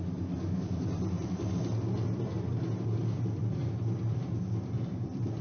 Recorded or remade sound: remade